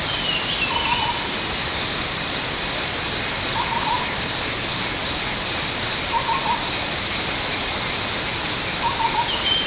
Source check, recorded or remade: recorded